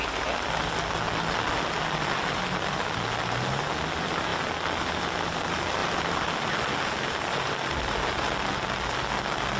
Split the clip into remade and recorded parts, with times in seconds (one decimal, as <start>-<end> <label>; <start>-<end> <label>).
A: 0.0-9.6 recorded